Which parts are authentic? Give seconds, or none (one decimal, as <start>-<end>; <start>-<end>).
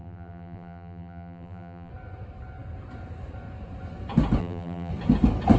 1.9-4.4; 4.9-5.6